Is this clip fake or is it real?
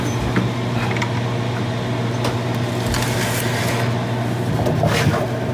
real